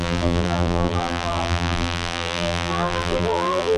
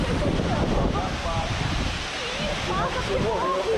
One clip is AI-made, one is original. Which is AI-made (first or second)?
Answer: first